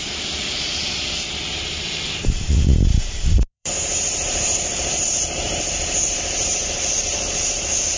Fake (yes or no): yes